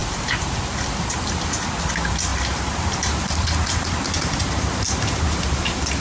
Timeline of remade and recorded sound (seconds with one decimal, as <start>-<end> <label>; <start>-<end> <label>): 0.0-2.3 recorded; 2.3-6.0 remade